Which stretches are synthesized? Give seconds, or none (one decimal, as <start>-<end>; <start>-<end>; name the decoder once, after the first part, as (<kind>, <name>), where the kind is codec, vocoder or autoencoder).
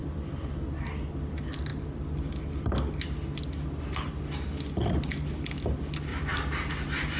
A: 0.0-0.8 (vocoder, BigVGAN v2); 6.1-6.7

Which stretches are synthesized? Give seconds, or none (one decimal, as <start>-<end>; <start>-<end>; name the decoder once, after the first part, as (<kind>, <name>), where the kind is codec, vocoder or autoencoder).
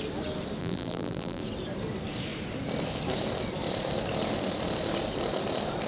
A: 0.6-1.4 (vocoder, BigVGAN v2)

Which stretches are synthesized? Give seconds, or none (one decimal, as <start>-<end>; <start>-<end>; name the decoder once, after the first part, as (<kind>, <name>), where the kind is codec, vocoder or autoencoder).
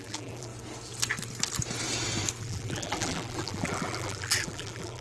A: 0.0-0.5 (vocoder, BigVGAN v2); 2.4-5.0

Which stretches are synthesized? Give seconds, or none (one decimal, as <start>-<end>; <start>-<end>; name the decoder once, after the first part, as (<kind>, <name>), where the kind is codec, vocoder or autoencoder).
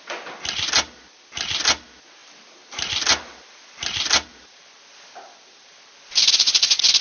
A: 2.2-6.3 (vocoder, BigVGAN v2)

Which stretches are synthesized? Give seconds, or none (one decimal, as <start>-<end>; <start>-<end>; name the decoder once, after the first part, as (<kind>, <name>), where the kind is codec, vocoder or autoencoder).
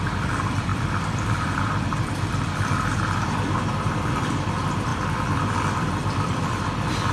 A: 0.0-7.1 (vocoder, BigVGAN v2)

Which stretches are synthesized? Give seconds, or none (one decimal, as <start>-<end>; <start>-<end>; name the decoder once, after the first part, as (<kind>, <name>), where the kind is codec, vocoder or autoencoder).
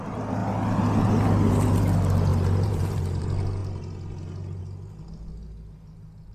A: 2.3-3.2 (vocoder, BigVGAN v2)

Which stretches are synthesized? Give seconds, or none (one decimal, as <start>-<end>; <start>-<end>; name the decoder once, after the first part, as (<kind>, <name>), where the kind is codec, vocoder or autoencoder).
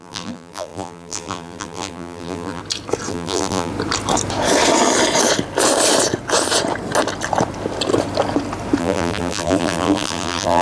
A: 0.0-2.6 (vocoder, BigVGAN v2); 3.1-3.7; 8.8-10.6